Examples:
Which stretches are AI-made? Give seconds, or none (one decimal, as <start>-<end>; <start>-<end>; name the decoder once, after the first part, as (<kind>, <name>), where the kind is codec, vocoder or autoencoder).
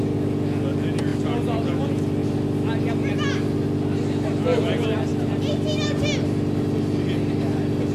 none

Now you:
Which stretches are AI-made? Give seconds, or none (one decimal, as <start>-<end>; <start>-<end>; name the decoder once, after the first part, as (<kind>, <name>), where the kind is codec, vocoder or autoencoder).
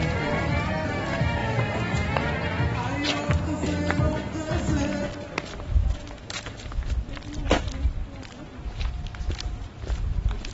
5.8-7.1 (autoencoder, DAC-VAE)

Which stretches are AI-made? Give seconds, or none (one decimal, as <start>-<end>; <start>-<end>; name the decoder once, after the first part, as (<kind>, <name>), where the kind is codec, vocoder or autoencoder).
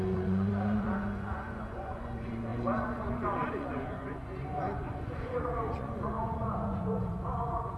0.0-7.8 (vocoder, Vocos)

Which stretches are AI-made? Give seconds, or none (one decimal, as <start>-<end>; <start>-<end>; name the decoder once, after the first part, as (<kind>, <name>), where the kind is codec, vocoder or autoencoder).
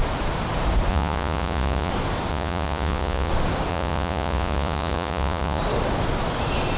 0.9-1.9 (vocoder, Vocos); 2.3-3.3; 3.7-5.6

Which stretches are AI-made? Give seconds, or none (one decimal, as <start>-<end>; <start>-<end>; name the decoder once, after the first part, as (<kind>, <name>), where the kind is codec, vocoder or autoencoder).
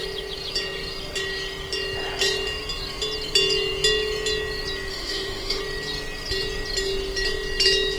4.9-5.6 (autoencoder, DAC-VAE)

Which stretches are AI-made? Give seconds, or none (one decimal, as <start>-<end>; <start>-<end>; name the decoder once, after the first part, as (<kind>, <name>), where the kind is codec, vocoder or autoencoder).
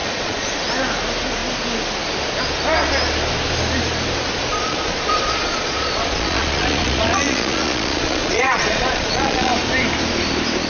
0.0-0.5 (vocoder, Vocos); 4.5-9.5